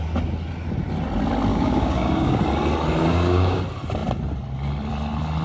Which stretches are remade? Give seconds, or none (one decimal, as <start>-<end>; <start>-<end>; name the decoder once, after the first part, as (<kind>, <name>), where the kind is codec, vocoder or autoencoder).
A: 1.5-2.4 (codec, DAC); 3.0-3.6